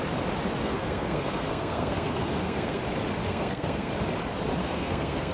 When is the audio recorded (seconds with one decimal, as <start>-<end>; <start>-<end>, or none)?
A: 0.0-0.6; 2.8-3.3; 3.9-4.6